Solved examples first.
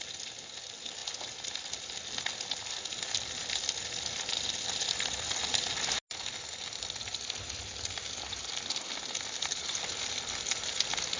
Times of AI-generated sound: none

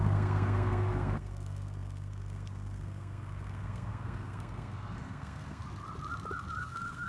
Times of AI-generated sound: 0.0-5.6 (codec, SNAC); 6.6-7.1

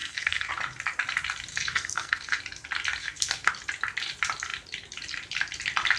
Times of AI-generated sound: 0.0-0.5 (codec, SNAC); 1.5-2.4; 3.0-3.5

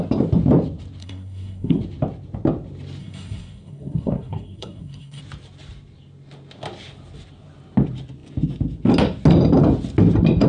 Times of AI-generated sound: 1.0-1.8 (codec, SNAC); 3.0-5.2

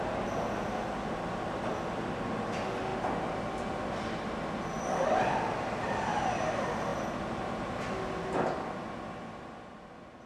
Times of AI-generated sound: none